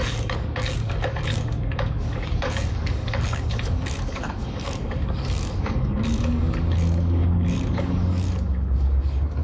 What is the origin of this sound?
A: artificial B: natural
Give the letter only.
A